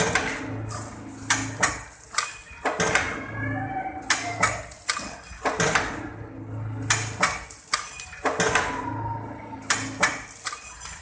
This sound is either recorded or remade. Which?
recorded